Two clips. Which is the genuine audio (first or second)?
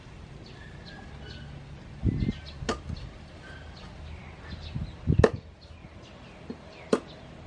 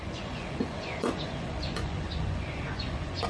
first